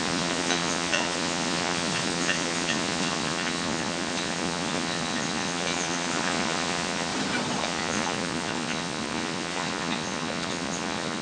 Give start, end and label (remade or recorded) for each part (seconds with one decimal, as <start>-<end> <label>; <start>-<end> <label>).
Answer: 0.0-7.1 remade; 7.1-7.6 recorded; 7.6-11.2 remade